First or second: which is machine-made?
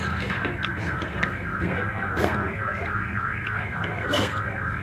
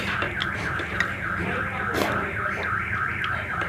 first